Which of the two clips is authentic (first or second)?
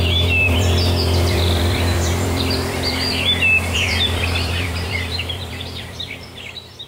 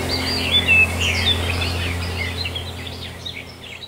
second